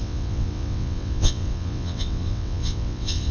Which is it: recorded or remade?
remade